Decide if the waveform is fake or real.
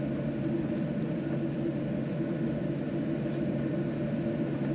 real